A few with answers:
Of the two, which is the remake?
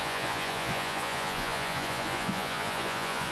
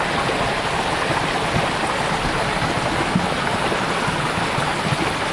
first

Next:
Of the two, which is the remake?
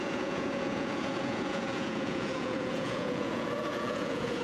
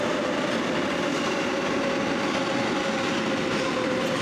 first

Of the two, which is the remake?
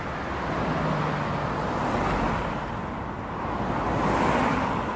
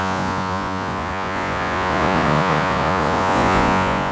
second